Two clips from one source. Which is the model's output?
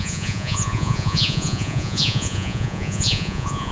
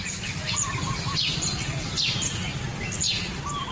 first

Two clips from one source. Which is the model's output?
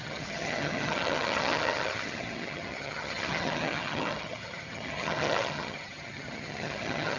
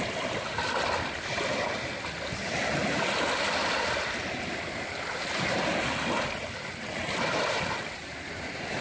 first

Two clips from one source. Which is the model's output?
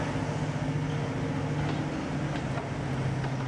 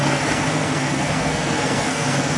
second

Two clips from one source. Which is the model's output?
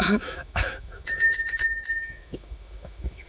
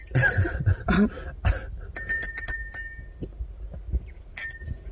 first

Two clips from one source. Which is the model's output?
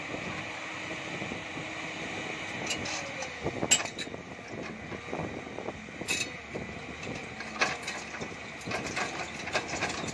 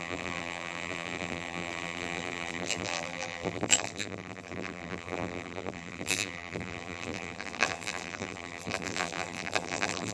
second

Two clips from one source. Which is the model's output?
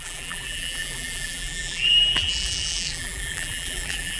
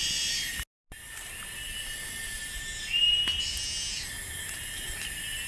first